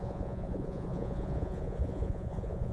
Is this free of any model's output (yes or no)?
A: no